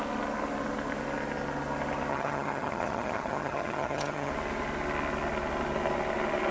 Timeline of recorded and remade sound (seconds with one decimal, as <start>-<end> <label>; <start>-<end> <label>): 0.0-2.1 recorded; 2.1-4.3 remade; 4.3-6.5 recorded